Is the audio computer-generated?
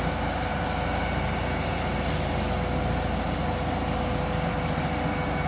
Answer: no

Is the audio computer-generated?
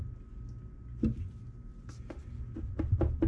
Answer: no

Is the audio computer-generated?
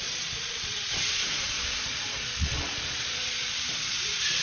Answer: yes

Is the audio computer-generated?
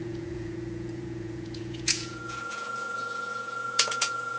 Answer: yes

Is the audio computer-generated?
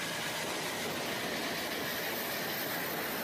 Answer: no